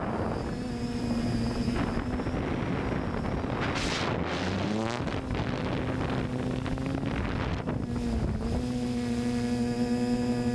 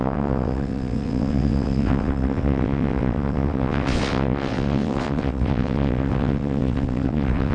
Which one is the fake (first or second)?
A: second